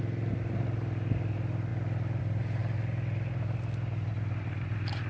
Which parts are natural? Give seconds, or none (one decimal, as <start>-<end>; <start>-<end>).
0.0-5.1